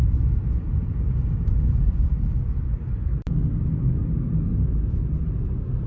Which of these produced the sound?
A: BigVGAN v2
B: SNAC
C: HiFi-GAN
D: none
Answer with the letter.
D